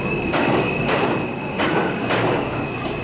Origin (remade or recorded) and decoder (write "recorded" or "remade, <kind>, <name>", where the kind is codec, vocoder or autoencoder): remade, codec, DAC